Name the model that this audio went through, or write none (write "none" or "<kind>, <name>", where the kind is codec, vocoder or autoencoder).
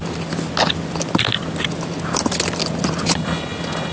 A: none